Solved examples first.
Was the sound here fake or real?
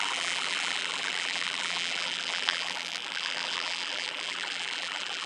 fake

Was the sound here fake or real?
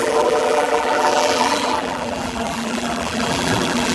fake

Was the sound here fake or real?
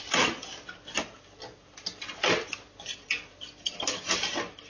real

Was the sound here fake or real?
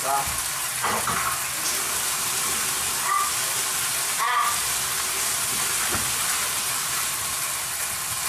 real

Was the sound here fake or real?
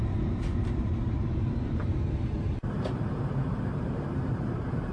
fake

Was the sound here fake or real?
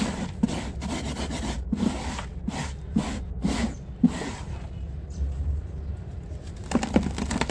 real